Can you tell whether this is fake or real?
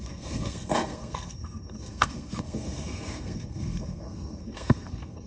fake